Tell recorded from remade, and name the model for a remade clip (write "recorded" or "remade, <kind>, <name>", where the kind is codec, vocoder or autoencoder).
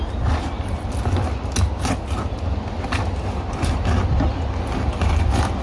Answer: recorded